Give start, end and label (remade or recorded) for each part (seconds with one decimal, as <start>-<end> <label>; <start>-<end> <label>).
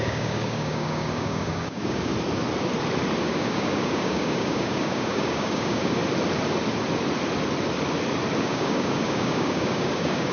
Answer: 0.0-2.1 remade; 2.1-3.2 recorded; 3.2-6.0 remade; 6.0-8.4 recorded; 8.4-10.3 remade